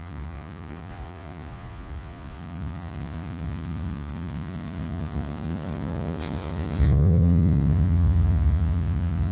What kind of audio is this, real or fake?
fake